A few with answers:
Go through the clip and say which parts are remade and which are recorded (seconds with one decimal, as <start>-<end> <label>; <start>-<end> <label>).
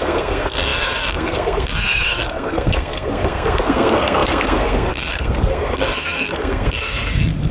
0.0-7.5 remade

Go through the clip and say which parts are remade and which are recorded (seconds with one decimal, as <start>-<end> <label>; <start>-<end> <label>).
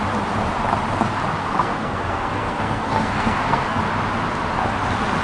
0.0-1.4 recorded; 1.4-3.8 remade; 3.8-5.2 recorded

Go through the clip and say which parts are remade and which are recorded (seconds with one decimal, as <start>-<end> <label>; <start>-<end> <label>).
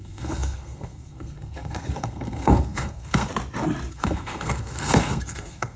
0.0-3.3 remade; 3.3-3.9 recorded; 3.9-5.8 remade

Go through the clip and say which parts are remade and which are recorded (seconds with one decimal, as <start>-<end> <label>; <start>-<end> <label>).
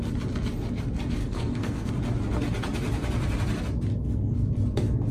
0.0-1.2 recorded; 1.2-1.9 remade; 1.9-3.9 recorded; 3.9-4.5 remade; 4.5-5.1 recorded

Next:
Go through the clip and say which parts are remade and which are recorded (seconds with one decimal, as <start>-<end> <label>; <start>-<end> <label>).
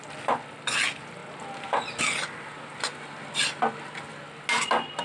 0.0-5.0 recorded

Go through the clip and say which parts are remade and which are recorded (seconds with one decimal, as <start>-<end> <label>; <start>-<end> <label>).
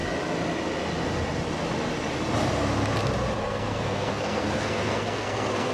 0.0-3.4 recorded; 3.4-5.7 remade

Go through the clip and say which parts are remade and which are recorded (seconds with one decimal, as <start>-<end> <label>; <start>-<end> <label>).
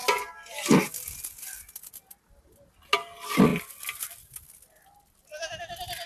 0.0-6.1 recorded